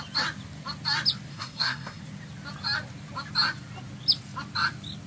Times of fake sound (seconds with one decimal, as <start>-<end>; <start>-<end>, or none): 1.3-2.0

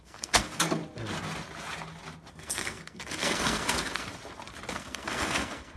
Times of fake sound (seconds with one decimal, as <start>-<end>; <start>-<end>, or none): 0.0-0.8; 2.3-4.1; 4.7-5.8

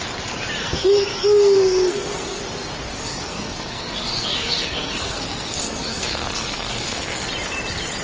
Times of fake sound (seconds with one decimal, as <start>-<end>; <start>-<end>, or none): 0.6-2.4; 2.9-7.2

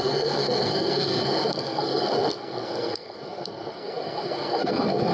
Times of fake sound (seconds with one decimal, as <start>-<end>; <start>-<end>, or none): 0.0-5.1